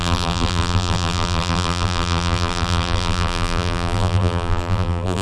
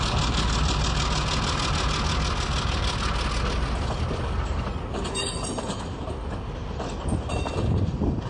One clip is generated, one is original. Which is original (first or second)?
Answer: second